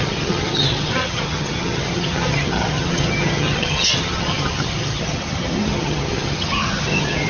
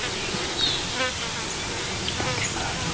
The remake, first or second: first